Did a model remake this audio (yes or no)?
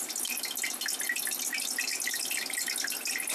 no